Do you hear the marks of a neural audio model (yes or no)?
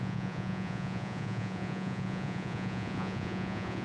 yes